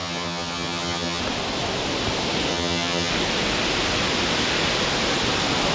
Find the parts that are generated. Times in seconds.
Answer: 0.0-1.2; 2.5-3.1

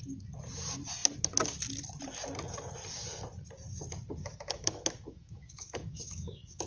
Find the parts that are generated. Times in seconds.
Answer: 4.2-6.7

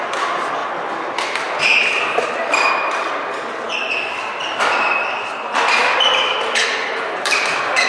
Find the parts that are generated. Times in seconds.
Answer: none

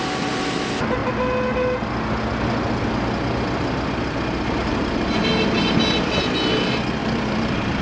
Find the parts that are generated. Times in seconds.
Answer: 4.7-5.8; 7.0-7.8